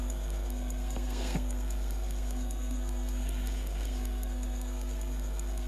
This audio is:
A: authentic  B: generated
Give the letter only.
B